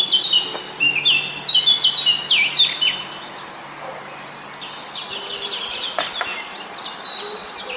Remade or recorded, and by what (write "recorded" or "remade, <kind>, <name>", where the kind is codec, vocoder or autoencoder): recorded